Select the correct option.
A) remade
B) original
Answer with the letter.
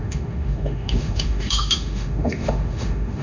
A